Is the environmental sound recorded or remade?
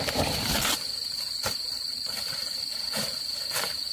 remade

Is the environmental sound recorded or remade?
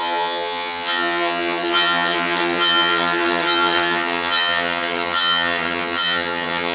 remade